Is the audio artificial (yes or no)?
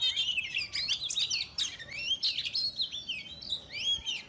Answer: no